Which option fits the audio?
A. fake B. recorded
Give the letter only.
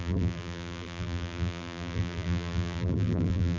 A